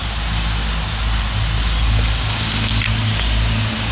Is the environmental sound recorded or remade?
recorded